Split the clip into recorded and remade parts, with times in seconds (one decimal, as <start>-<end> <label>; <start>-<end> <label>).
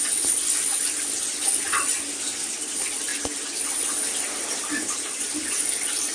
0.0-6.1 recorded